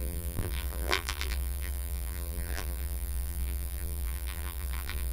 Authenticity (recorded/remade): remade